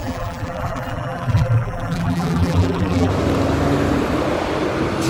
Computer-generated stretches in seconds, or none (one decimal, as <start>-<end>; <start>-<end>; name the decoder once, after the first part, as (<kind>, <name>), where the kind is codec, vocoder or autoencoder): 0.0-3.1 (vocoder, BigVGAN v2)